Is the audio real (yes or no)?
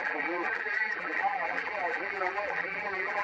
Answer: no